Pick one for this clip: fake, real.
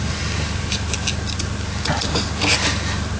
real